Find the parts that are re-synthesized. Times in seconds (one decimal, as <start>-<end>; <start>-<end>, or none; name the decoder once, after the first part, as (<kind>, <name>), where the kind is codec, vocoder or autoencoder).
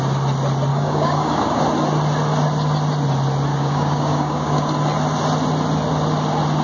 0.7-1.6 (codec, DAC); 3.5-4.7